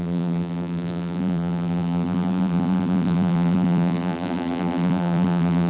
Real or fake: fake